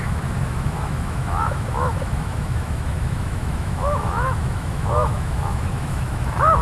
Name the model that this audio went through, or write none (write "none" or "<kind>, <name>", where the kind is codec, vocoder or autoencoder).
autoencoder, DAC-VAE